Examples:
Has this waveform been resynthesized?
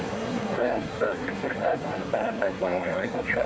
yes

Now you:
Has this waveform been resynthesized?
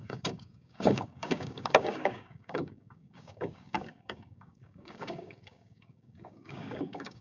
yes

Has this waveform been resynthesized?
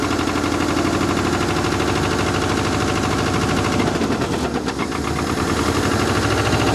no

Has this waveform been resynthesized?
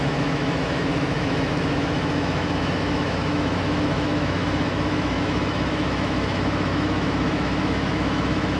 yes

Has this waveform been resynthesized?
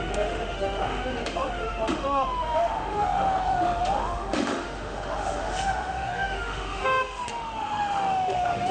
yes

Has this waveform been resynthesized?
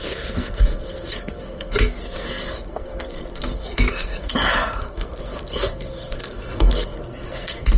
yes